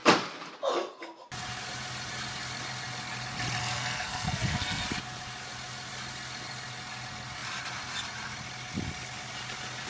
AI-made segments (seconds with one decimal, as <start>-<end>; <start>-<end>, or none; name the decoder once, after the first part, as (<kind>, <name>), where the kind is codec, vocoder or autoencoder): 3.6-4.8 (codec, SNAC)

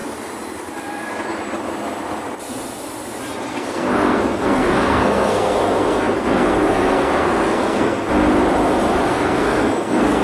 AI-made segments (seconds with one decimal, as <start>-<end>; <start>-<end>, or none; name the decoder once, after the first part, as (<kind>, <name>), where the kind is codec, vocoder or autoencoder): 3.5-8.1 (codec, SNAC); 9.1-10.2

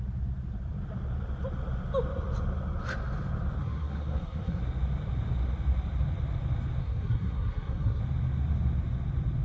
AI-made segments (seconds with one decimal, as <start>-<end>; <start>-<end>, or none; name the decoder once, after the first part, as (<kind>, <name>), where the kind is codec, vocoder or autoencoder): 3.6-4.6 (codec, SNAC); 6.8-8.0

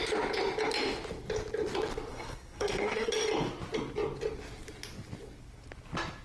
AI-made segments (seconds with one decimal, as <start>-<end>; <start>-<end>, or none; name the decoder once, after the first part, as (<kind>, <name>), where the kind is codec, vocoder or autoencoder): 2.1-3.1 (codec, SNAC)

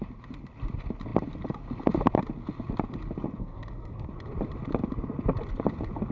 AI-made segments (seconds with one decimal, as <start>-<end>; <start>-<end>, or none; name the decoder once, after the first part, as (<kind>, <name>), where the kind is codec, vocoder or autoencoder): 3.4-4.1 (codec, SNAC)